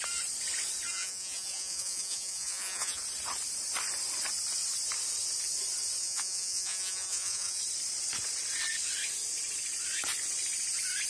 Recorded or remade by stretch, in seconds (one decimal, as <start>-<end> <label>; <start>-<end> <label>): 0.0-0.9 recorded; 0.9-3.0 remade; 3.0-6.0 recorded; 6.0-7.6 remade; 7.6-11.1 recorded